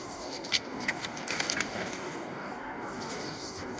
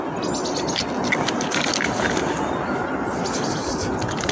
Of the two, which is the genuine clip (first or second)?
second